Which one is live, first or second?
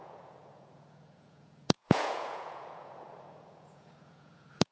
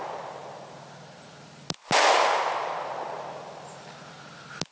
second